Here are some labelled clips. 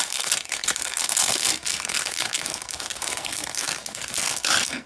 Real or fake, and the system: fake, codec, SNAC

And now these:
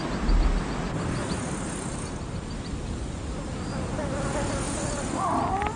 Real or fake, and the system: real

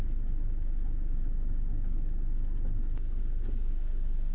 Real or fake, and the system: real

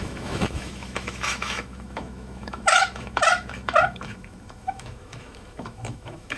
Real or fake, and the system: fake, autoencoder, DAC-VAE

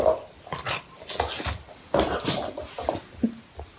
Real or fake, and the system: real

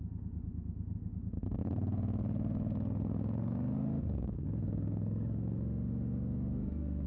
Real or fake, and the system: fake, autoencoder, DAC-VAE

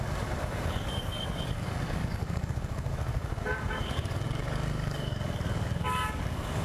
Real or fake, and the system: fake, codec, DAC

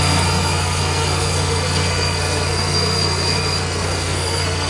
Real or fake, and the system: fake, codec, SNAC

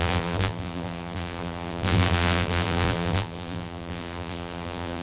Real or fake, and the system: fake, vocoder, BigVGAN v2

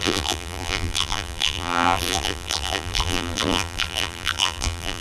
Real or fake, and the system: fake, vocoder, BigVGAN v2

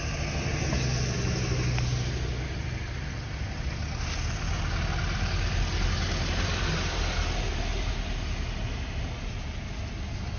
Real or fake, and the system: real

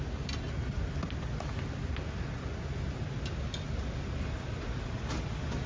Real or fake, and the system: real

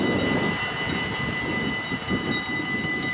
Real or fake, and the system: real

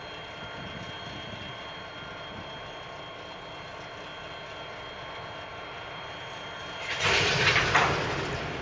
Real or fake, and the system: real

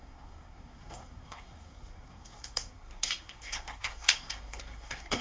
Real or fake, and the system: fake, codec, SNAC